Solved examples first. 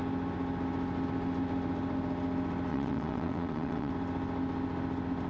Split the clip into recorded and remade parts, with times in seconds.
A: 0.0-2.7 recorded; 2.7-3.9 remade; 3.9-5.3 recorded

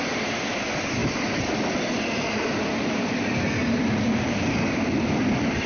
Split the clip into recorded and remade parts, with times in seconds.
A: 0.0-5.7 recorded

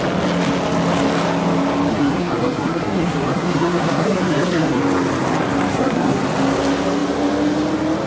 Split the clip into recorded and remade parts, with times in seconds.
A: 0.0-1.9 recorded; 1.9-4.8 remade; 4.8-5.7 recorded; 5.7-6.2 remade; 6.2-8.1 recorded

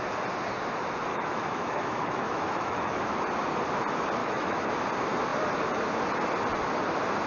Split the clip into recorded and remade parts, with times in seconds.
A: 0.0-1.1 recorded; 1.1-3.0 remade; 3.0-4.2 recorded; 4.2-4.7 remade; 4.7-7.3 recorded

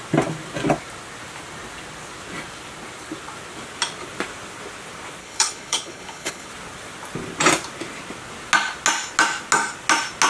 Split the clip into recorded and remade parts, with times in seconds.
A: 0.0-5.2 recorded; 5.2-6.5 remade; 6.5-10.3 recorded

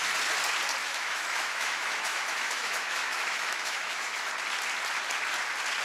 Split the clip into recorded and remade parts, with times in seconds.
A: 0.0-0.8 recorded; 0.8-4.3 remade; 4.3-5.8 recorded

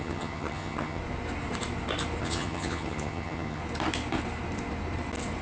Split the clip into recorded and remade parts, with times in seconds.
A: 0.0-1.0 remade; 1.0-2.2 recorded; 2.2-3.6 remade; 3.6-5.4 recorded

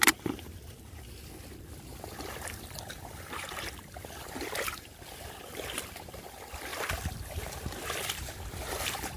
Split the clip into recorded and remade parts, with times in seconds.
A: 0.0-1.9 recorded; 1.9-4.9 remade; 4.9-6.7 recorded; 6.7-9.2 remade